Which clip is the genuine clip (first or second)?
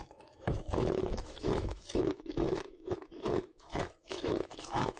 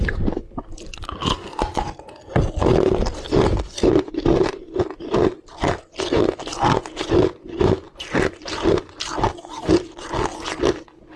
second